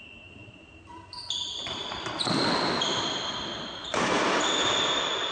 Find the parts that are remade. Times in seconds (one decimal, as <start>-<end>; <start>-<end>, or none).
none